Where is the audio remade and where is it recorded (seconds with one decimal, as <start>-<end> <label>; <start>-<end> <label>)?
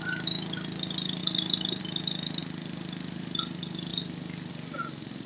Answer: 0.0-5.3 recorded